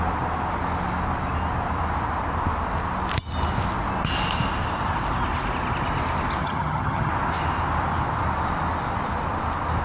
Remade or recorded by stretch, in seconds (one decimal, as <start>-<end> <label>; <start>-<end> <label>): 0.0-6.4 recorded; 6.4-7.1 remade; 7.1-9.8 recorded